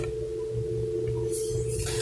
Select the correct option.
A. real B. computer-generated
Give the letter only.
A